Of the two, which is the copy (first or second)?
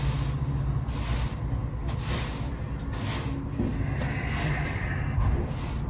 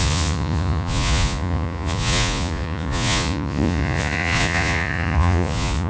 second